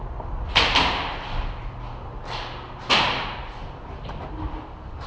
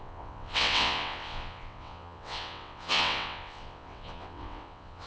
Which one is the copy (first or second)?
second